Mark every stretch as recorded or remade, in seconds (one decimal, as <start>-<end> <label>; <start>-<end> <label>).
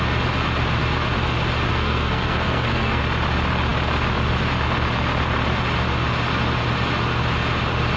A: 0.0-1.7 recorded; 1.7-3.0 remade; 3.0-8.0 recorded